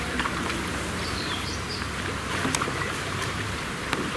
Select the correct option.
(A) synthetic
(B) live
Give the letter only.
A